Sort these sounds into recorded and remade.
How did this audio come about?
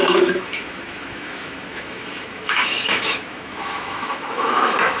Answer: remade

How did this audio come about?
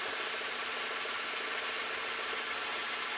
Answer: recorded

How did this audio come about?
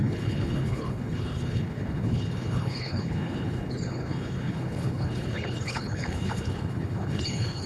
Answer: remade